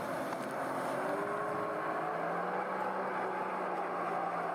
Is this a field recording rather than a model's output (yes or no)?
yes